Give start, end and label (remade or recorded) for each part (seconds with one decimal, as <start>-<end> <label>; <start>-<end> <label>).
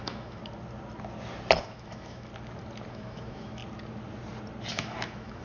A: 0.0-0.4 remade; 0.4-1.6 recorded; 1.6-2.3 remade; 2.3-2.9 recorded; 2.9-3.6 remade; 3.6-4.7 recorded; 4.7-5.4 remade